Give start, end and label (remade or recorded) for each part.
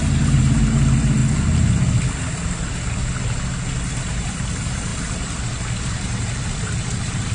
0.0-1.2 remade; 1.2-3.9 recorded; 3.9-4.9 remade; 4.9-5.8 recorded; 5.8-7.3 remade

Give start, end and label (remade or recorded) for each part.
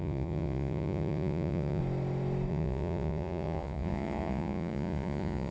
0.0-1.8 remade; 1.8-2.5 recorded; 2.5-5.5 remade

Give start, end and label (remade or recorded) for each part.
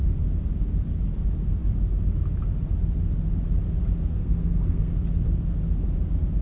0.0-4.1 recorded; 4.1-5.0 remade; 5.0-6.4 recorded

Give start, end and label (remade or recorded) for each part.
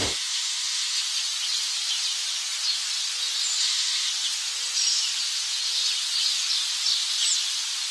0.0-1.0 remade; 1.0-3.6 recorded; 3.6-4.1 remade; 4.1-7.9 recorded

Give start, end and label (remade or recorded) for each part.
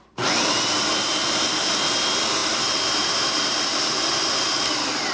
0.0-2.4 recorded; 2.4-4.3 remade; 4.3-5.1 recorded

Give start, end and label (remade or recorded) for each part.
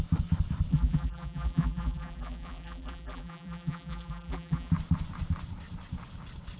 0.0-0.7 recorded; 0.7-4.7 remade; 4.7-6.6 recorded